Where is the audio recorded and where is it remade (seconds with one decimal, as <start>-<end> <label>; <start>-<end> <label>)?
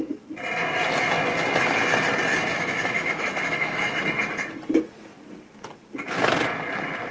0.0-2.5 recorded; 2.5-4.0 remade; 4.0-7.1 recorded